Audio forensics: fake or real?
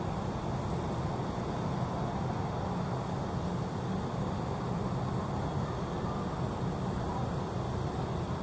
real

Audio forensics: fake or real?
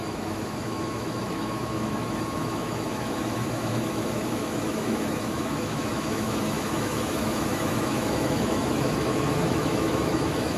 fake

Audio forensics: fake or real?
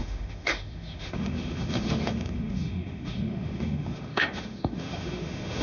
fake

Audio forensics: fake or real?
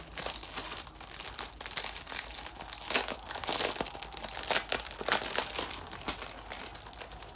real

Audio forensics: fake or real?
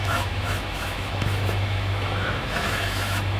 fake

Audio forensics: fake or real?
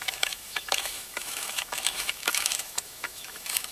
fake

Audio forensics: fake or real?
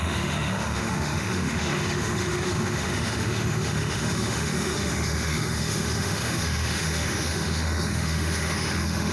fake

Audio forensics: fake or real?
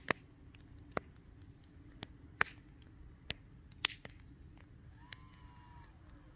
real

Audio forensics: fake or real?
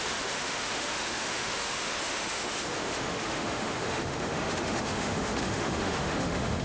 fake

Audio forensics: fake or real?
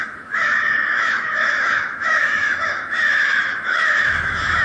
fake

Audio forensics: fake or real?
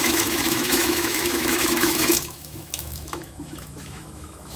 fake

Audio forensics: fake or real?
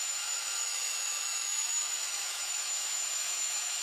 fake